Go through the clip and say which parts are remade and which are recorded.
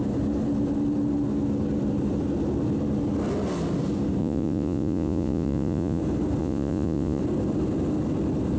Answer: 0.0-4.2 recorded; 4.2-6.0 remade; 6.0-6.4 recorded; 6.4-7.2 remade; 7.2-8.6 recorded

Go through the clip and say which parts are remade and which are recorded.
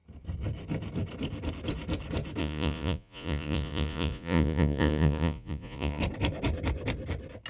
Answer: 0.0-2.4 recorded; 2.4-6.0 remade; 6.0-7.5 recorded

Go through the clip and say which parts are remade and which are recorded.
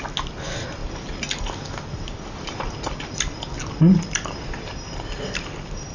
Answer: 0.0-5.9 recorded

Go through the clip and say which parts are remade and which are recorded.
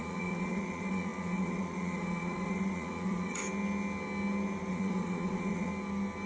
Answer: 0.0-3.4 remade; 3.4-4.7 recorded; 4.7-5.7 remade; 5.7-6.3 recorded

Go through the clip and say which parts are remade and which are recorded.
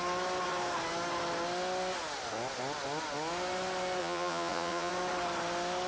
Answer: 0.0-4.0 recorded; 4.0-4.9 remade; 4.9-5.9 recorded